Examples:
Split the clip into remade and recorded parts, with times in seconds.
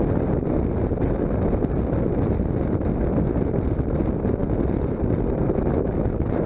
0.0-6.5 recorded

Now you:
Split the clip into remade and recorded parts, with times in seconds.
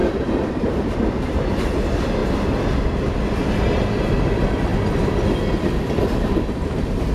0.0-2.2 remade; 2.2-4.1 recorded; 4.1-4.7 remade; 4.7-6.1 recorded; 6.1-7.1 remade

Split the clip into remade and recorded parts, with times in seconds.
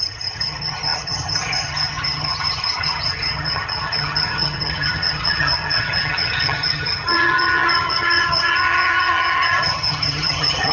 0.0-10.7 remade